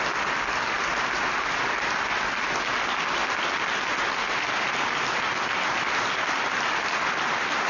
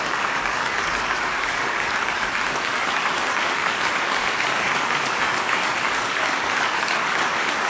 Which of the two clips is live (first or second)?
first